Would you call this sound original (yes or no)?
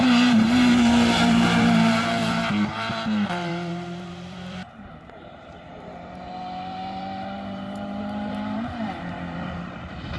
no